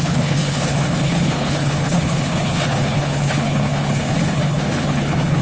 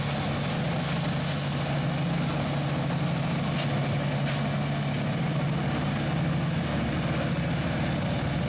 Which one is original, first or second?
second